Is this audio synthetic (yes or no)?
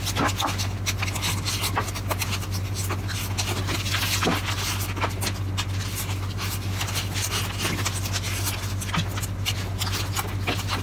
no